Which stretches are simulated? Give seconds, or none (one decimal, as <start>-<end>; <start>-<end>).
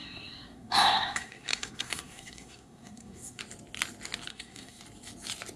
0.0-3.4; 4.3-4.8